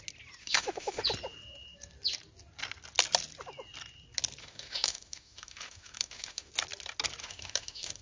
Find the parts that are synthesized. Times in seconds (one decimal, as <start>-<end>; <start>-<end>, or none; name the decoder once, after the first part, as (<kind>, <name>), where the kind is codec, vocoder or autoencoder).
0.4-1.0 (autoencoder, DAC-VAE); 4.4-6.5; 7.2-8.0